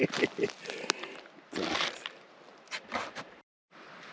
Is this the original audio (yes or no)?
yes